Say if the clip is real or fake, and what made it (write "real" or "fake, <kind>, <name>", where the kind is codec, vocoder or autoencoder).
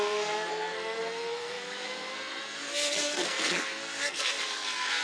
fake, codec, SNAC